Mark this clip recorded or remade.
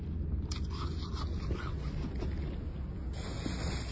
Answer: recorded